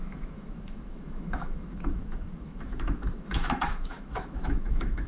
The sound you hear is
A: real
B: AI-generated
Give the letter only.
B